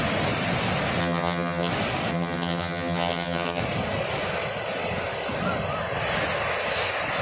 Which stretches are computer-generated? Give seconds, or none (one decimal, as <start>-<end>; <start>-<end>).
1.0-1.7; 2.1-3.6